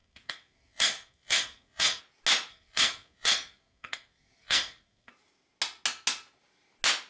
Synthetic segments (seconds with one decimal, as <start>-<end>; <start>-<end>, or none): 0.0-2.0; 2.5-5.1